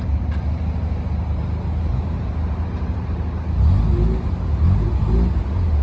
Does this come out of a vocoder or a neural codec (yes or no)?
no